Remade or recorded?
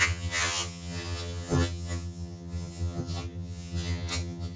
remade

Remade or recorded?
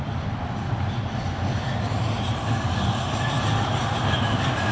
recorded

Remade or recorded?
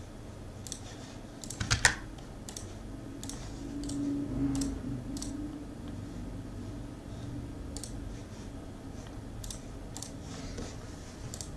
recorded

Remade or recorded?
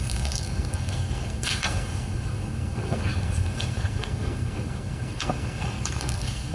remade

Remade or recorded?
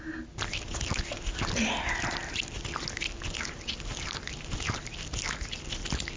recorded